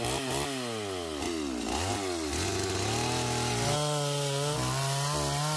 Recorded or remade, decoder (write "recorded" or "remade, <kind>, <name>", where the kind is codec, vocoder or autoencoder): recorded